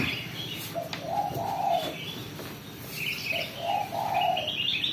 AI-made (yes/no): no